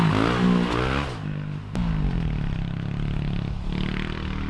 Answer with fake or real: real